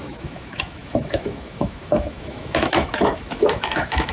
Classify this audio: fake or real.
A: fake